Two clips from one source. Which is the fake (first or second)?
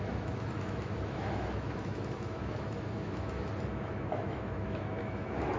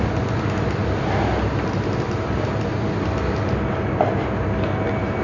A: first